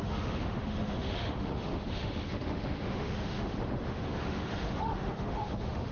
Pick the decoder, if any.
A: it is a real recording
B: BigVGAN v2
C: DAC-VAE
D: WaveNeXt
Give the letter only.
C